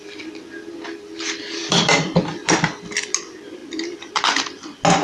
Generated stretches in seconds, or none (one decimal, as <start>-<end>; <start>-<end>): 1.6-2.4